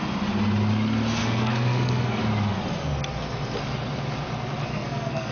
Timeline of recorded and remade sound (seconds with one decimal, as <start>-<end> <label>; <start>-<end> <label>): 0.0-1.2 recorded; 1.2-2.2 remade; 2.2-4.7 recorded; 4.7-5.3 remade